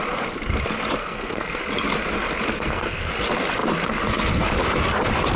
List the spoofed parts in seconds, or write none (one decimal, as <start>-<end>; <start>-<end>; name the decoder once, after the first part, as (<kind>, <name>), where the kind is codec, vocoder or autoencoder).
1.0-1.6 (codec, SNAC); 2.5-3.1